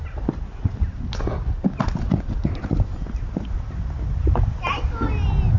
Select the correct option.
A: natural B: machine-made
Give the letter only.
A